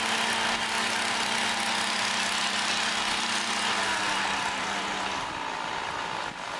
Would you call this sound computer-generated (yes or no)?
no